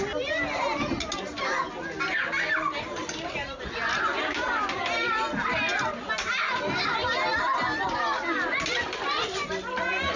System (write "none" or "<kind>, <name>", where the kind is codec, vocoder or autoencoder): none